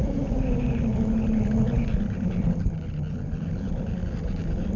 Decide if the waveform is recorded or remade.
recorded